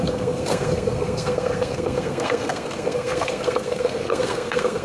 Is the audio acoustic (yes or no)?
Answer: no